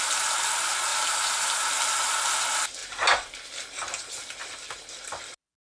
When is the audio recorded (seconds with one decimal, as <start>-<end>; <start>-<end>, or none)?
0.0-0.9; 1.6-5.7